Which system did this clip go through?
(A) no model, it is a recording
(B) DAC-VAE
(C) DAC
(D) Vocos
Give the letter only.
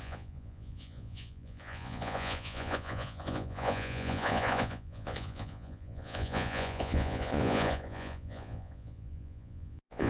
D